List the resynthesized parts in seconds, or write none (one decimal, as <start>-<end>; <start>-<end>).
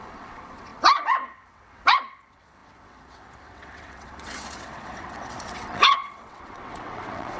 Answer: 0.0-7.4